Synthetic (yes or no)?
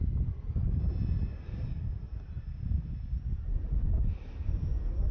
no